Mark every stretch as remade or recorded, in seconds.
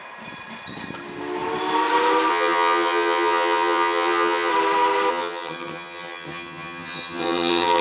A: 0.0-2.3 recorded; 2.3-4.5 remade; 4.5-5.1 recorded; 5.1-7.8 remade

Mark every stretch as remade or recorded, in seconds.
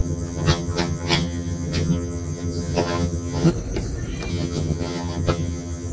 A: 0.0-3.5 remade; 3.5-4.3 recorded; 4.3-5.9 remade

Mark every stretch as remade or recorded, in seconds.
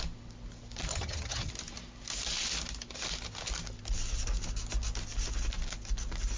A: 0.0-0.9 recorded; 0.9-1.5 remade; 1.5-6.4 recorded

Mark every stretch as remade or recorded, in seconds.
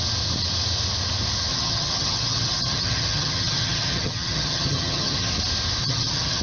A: 0.0-1.5 recorded; 1.5-5.3 remade; 5.3-5.8 recorded; 5.8-6.4 remade